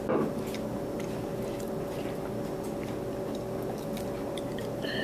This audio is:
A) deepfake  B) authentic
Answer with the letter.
B